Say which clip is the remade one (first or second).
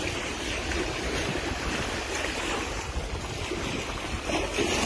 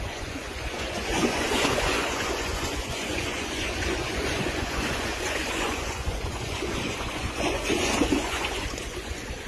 second